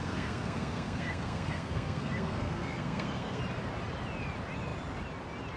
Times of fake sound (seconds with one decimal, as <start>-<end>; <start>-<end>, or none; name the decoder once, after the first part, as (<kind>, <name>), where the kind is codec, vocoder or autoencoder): 0.0-3.4 (codec, SNAC)